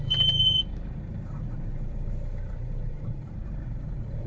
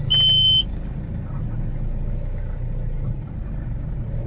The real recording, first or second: second